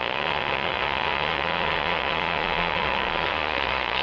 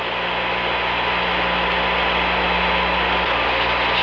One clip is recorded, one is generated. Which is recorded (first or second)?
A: second